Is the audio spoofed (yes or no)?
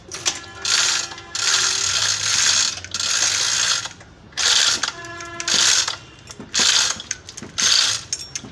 no